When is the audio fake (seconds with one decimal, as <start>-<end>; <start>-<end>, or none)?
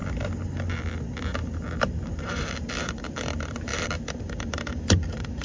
1.8-5.4